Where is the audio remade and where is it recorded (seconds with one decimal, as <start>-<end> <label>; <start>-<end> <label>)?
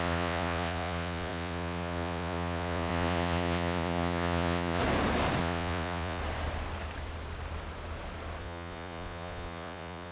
0.0-4.8 remade; 4.8-5.4 recorded; 5.4-6.2 remade; 6.2-8.4 recorded; 8.4-10.1 remade